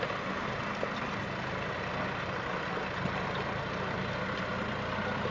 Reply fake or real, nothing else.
real